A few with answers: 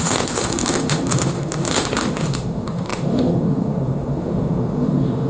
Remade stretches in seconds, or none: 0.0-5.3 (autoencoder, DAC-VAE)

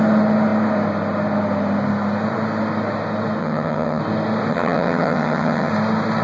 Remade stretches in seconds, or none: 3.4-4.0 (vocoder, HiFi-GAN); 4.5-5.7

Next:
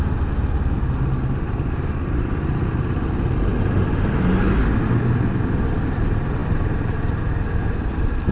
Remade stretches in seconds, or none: 6.4-7.2 (vocoder, BigVGAN v2)

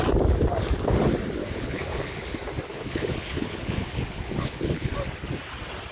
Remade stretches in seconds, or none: 1.4-2.3 (codec, HILCodec); 2.7-4.9

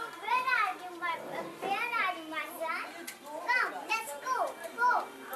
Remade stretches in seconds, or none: 0.0-0.7 (vocoder, BigVGAN v2); 3.9-5.4